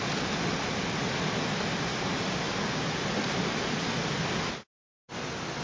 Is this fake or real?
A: real